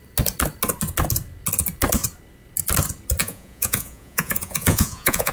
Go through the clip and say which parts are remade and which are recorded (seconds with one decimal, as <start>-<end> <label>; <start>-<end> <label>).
0.0-3.2 recorded; 3.2-5.3 remade